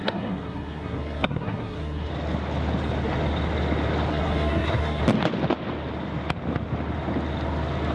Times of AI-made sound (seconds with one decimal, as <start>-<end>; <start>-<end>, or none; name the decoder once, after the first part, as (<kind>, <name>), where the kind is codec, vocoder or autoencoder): 0.0-2.1 (codec, SNAC); 4.1-5.0